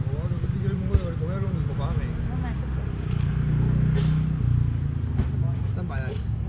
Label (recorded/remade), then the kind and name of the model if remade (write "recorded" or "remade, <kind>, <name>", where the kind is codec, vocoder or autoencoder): recorded